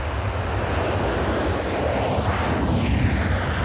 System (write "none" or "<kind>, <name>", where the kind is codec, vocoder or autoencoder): none